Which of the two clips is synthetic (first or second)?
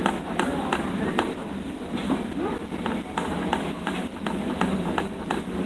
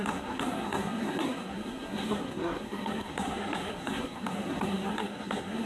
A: second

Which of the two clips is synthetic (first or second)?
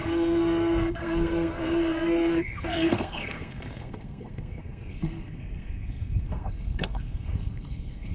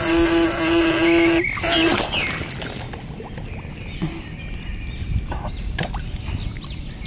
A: first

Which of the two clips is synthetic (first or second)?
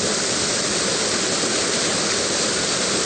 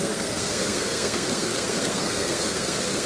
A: second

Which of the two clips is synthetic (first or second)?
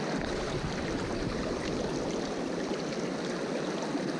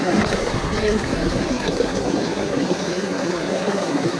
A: second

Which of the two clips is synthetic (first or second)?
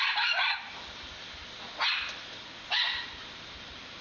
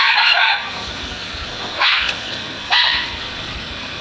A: second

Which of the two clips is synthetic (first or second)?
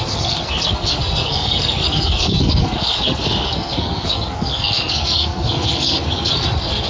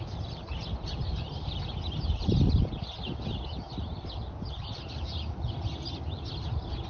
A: first